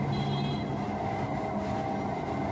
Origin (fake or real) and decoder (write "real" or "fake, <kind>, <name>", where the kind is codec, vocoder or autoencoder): real